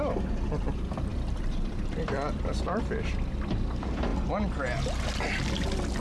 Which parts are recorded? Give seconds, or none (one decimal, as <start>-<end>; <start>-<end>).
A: 4.1-6.0